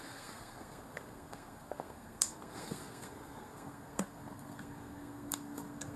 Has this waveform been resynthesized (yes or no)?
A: yes